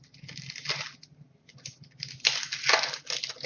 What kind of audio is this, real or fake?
real